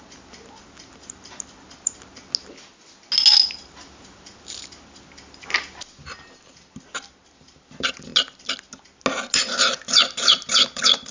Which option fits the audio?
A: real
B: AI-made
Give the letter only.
A